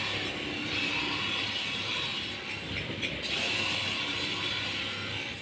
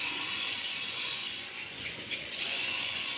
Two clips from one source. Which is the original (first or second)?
first